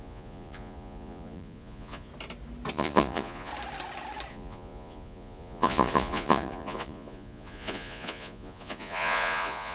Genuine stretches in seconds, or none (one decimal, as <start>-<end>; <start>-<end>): 2.1-2.7; 3.5-4.3